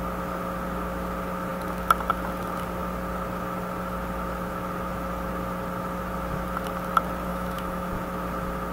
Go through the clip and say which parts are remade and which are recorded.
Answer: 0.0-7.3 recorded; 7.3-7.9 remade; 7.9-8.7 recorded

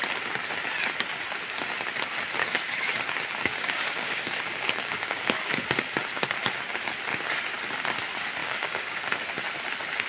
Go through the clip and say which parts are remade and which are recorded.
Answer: 0.0-2.4 recorded; 2.4-3.0 remade; 3.0-3.5 recorded; 3.5-5.5 remade; 5.5-8.4 recorded; 8.4-9.0 remade; 9.0-10.1 recorded

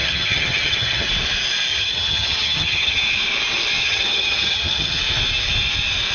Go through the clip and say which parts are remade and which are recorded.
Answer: 0.0-1.1 remade; 1.1-1.7 recorded; 1.7-3.0 remade; 3.0-3.8 recorded; 3.8-5.0 remade; 5.0-6.1 recorded

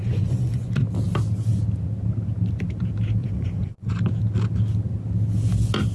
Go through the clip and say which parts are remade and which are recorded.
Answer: 0.0-0.7 remade; 0.7-3.2 recorded; 3.2-3.9 remade; 3.9-5.9 recorded

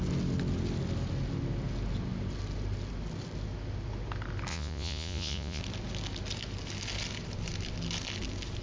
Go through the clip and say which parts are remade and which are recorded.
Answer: 0.0-4.5 recorded; 4.5-5.6 remade; 5.6-8.6 recorded

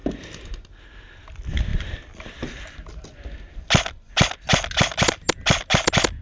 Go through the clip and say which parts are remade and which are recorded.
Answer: 0.0-6.2 recorded